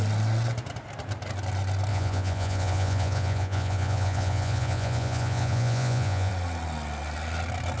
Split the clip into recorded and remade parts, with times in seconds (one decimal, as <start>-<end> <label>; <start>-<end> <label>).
0.0-1.9 recorded; 1.9-6.3 remade; 6.3-7.8 recorded